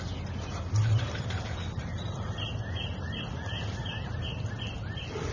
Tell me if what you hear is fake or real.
real